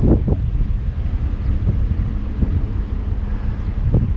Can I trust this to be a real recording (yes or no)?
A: yes